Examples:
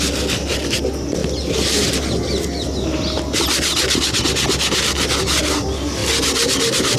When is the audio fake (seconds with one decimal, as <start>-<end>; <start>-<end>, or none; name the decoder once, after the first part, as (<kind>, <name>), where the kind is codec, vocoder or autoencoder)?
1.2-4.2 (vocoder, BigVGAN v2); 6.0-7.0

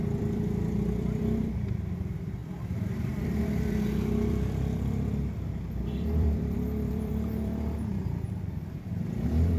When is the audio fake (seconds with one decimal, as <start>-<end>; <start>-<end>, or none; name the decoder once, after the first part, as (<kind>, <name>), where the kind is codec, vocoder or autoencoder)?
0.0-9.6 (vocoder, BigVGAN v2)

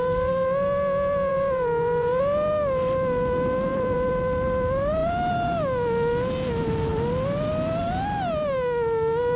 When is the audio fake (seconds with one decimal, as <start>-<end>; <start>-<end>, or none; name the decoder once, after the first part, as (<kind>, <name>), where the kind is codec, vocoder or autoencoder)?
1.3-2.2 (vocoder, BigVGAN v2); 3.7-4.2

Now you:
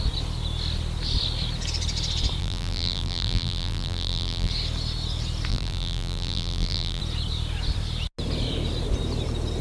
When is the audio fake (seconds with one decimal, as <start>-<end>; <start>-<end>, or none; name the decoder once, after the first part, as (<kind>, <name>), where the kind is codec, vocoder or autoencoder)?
2.4-4.5 (vocoder, BigVGAN v2); 5.5-7.0